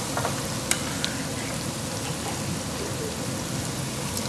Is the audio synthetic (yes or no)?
no